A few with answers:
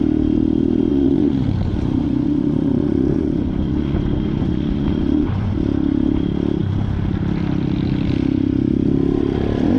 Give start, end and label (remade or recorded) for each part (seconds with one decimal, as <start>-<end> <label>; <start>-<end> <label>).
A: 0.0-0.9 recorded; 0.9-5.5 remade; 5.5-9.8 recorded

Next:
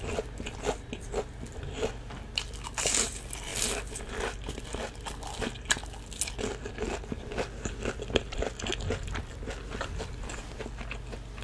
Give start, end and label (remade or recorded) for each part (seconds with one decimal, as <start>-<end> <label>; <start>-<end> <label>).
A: 0.0-11.4 recorded

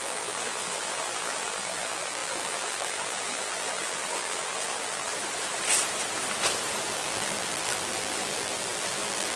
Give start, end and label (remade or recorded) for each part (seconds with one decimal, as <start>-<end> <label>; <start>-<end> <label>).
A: 0.0-5.1 remade; 5.1-6.9 recorded; 6.9-9.4 remade

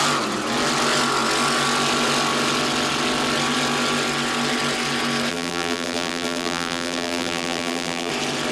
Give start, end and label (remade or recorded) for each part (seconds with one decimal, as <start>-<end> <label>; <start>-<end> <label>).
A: 0.0-5.3 recorded; 5.3-8.1 remade; 8.1-8.5 recorded

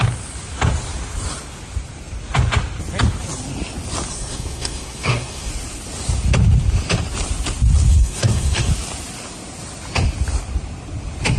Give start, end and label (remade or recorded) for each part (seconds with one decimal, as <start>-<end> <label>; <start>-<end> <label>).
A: 0.0-4.1 recorded; 4.1-5.5 remade; 5.5-7.9 recorded; 7.9-8.7 remade; 8.7-11.4 recorded

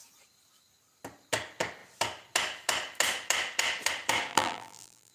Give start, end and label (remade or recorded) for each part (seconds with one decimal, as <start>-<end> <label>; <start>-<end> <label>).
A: 0.0-4.3 recorded; 4.3-5.1 remade